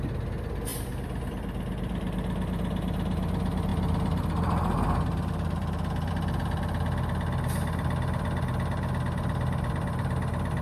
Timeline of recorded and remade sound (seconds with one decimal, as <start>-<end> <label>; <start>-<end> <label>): 0.0-0.7 recorded; 0.7-1.3 remade; 1.3-10.6 recorded